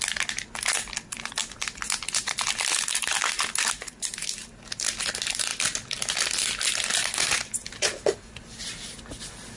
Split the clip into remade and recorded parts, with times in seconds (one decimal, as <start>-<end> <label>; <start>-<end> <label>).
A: 0.0-9.6 recorded